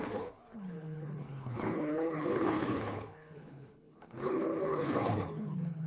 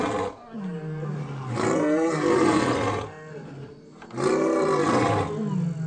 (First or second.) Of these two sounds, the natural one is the second